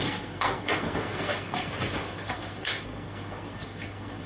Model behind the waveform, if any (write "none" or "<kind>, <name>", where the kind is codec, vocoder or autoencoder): codec, SNAC